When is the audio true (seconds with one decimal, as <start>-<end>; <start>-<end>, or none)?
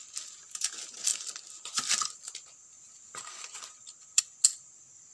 0.0-1.1; 4.2-5.1